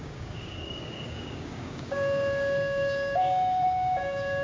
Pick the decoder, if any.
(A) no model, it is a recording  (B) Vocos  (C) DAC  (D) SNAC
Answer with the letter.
C